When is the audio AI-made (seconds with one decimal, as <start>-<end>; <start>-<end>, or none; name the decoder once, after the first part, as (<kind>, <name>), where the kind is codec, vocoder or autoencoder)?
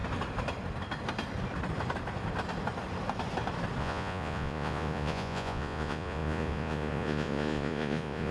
3.8-8.3 (vocoder, Vocos)